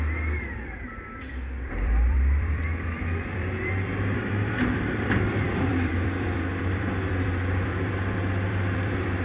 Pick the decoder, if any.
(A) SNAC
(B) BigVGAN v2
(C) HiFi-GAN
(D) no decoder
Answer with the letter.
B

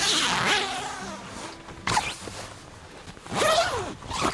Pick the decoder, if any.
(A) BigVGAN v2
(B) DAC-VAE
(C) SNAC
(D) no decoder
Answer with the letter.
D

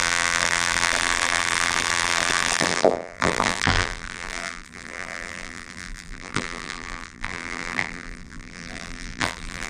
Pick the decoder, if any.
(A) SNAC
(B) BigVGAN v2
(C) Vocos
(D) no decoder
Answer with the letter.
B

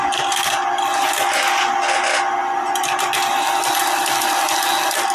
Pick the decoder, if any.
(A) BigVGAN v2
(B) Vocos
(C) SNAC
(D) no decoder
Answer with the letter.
D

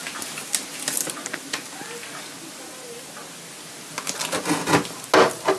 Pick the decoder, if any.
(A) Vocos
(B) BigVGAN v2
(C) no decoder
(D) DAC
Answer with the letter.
C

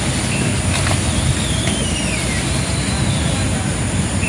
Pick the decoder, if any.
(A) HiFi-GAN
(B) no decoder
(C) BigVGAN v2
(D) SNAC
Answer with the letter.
B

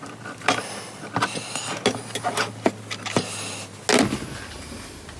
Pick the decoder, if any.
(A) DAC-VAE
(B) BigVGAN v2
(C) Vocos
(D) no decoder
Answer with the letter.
D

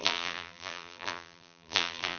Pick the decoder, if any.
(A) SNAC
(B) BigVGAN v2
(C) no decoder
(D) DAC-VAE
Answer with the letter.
B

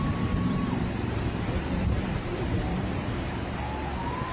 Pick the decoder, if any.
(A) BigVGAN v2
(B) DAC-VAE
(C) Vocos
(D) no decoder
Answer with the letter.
A